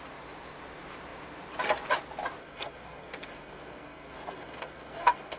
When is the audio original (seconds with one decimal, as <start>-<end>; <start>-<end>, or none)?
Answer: 0.0-2.4